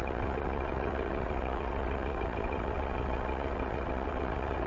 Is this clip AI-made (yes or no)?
yes